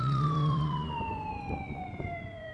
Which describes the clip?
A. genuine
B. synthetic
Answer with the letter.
B